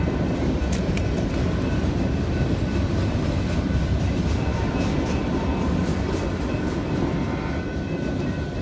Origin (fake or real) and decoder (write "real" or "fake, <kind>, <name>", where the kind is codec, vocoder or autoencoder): fake, vocoder, BigVGAN v2